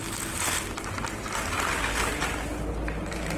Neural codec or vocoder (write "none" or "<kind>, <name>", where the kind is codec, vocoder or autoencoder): none